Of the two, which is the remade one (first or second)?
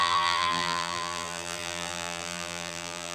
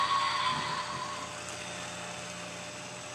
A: first